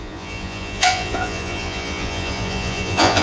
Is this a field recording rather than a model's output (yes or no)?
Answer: no